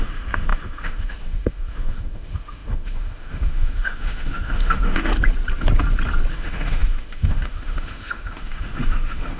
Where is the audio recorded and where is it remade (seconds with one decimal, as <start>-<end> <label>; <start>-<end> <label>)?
0.0-5.1 remade; 5.1-6.3 recorded; 6.3-9.4 remade